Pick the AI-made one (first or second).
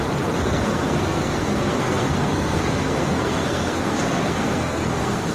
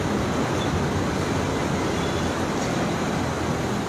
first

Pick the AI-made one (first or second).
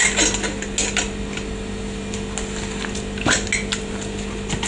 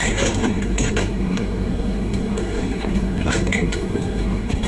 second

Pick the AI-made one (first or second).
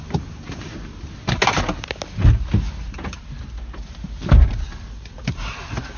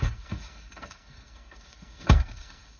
second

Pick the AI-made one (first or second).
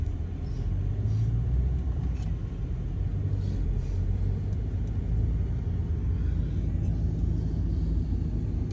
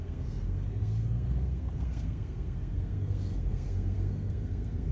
second